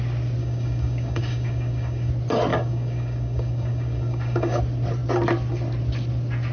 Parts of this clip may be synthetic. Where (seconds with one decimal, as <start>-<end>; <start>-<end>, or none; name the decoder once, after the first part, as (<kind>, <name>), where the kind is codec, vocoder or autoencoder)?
0.4-2.1 (codec, DAC); 2.5-4.6